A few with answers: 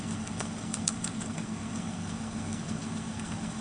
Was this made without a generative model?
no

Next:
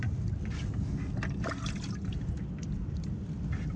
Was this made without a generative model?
yes